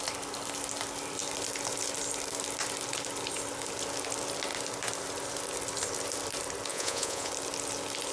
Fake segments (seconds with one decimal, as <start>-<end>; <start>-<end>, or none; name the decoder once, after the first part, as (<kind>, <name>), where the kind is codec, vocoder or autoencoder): 6.7-7.3 (vocoder, Vocos)

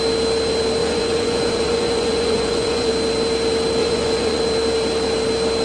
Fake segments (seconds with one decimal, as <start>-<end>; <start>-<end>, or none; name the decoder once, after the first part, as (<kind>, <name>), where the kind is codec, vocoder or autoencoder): 0.8-2.9 (vocoder, Vocos); 3.8-4.4

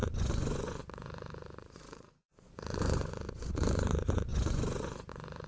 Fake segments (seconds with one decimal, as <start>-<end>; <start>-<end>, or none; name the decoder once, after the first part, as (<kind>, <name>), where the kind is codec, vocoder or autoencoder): 0.0-5.5 (vocoder, Vocos)

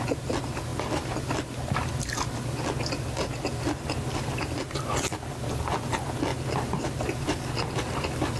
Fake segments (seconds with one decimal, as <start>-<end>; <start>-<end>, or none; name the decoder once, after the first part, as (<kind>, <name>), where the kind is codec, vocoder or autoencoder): none